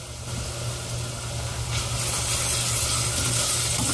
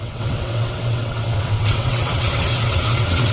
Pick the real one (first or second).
first